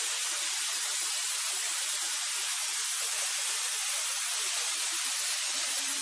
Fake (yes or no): no